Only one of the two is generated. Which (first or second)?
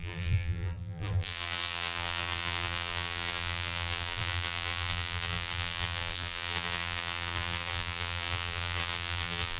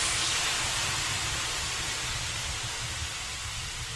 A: first